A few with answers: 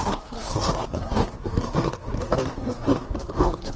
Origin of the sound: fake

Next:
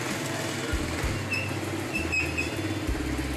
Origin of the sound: real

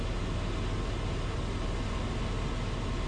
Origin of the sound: real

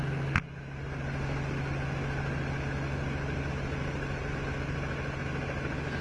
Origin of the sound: real